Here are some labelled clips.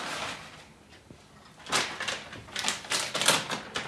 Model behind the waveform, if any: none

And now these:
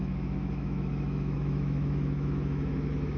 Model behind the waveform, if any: autoencoder, DAC-VAE